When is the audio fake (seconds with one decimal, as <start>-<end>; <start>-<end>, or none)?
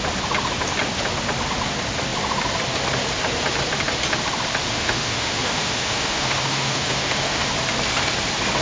4.7-7.5